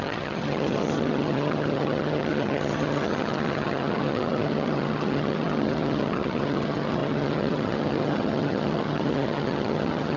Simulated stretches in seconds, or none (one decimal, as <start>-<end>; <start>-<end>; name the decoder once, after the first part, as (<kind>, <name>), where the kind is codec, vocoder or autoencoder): 0.0-10.2 (vocoder, HiFi-GAN)